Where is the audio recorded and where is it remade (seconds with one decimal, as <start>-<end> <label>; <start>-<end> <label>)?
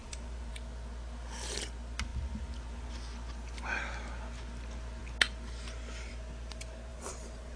0.0-0.5 remade; 0.5-6.9 recorded; 6.9-7.6 remade